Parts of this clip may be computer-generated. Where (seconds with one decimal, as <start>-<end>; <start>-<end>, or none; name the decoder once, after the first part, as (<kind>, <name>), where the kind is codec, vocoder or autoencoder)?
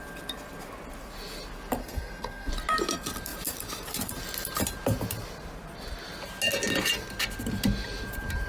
1.8-2.5 (codec, SNAC)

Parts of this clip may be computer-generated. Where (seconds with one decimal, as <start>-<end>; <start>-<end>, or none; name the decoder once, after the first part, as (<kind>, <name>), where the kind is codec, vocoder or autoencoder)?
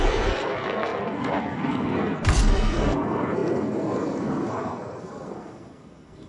0.0-6.3 (codec, SNAC)